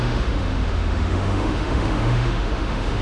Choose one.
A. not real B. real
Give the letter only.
A